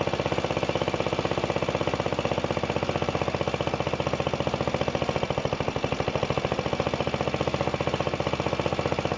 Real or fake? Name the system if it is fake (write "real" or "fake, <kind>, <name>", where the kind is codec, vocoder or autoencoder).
real